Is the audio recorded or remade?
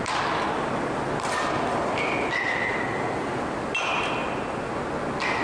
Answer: recorded